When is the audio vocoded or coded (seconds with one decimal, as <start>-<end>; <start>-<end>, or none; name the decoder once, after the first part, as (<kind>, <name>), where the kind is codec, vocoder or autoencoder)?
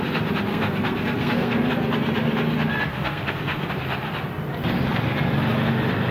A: 0.5-1.7 (codec, SNAC); 2.9-3.7